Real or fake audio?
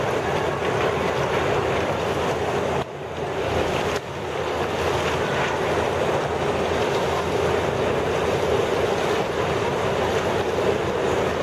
real